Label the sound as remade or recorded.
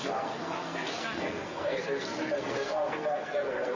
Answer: remade